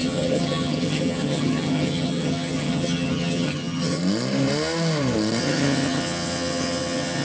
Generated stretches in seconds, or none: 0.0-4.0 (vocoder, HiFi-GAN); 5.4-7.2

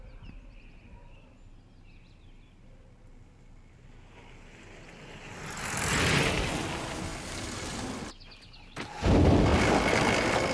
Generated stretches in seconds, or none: 9.5-10.1 (vocoder, BigVGAN v2)

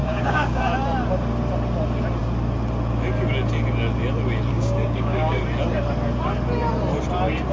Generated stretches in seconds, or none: 0.0-0.6 (codec, DAC); 4.5-5.4

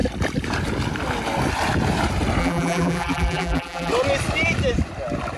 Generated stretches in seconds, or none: 2.4-3.9 (vocoder, BigVGAN v2)

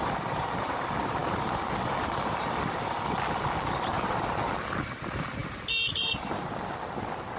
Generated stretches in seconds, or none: none

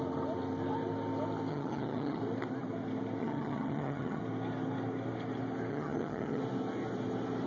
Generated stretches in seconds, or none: 1.5-2.2 (vocoder, HiFi-GAN); 3.2-4.2; 5.7-6.4

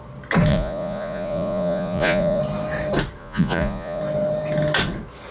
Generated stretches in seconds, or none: 0.5-2.4 (vocoder, Vocos); 3.2-4.0